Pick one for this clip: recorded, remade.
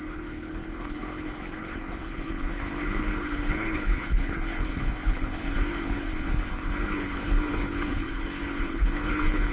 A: remade